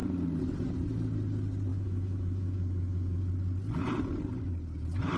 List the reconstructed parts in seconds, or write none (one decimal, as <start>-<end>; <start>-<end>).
1.7-3.2